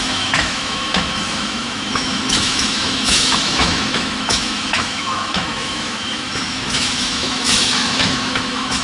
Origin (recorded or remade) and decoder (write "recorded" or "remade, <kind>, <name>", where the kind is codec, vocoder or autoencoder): remade, autoencoder, DAC-VAE